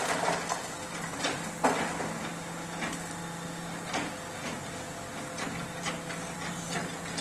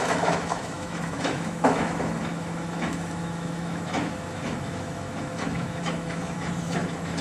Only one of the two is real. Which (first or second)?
first